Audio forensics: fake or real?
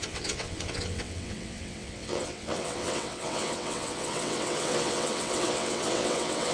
fake